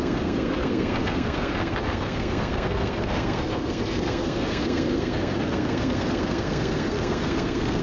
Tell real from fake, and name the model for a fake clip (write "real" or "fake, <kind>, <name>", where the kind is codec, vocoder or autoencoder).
fake, codec, SNAC